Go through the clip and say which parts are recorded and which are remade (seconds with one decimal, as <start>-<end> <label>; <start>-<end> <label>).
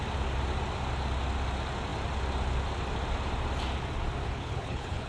0.0-4.2 recorded; 4.2-5.1 remade